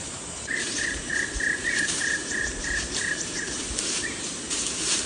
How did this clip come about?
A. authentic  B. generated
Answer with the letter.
B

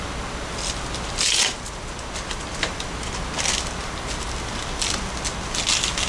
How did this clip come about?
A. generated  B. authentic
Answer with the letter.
B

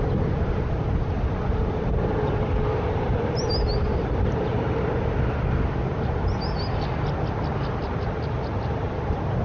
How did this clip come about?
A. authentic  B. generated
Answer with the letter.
A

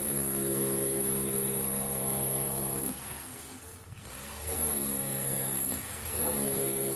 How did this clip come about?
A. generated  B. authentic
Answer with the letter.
A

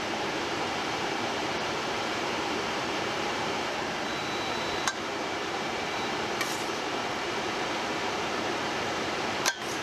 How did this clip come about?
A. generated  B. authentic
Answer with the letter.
A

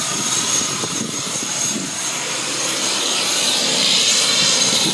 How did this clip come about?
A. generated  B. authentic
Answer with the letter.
A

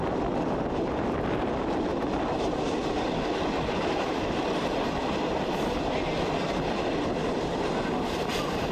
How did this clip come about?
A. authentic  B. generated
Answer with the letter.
A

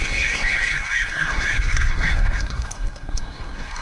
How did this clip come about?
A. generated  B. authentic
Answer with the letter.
A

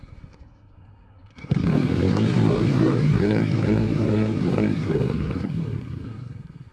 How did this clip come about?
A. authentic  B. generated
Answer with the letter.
B